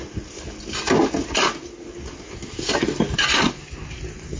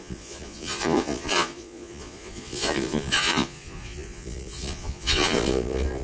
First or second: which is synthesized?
second